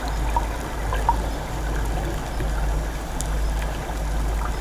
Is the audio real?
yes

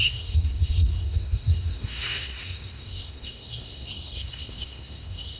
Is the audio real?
no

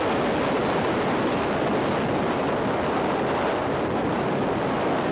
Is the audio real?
yes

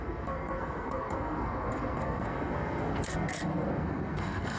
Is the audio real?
no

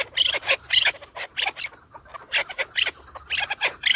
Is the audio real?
yes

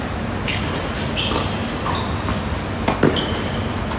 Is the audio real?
yes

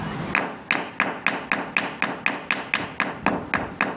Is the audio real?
yes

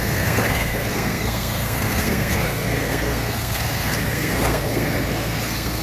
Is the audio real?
no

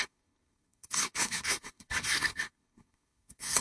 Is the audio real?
no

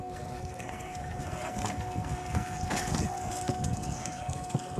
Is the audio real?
no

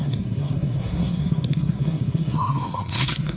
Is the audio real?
no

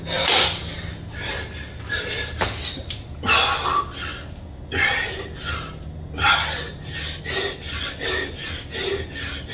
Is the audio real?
yes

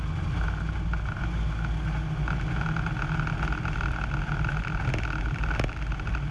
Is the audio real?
yes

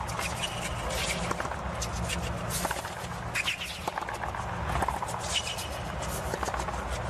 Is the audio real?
yes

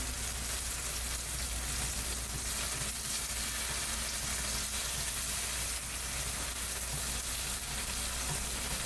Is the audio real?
yes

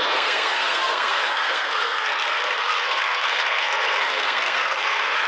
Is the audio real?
no